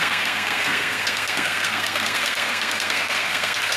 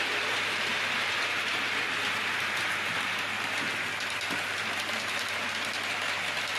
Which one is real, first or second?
second